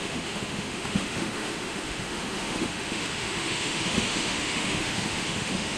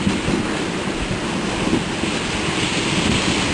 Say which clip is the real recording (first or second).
second